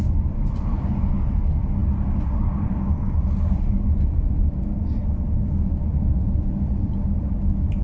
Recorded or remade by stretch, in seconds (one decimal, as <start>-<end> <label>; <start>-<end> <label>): 0.0-7.8 recorded